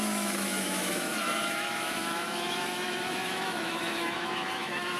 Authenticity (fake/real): fake